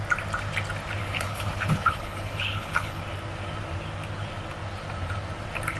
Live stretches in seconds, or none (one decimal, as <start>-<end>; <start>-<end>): 0.0-1.0; 3.0-5.8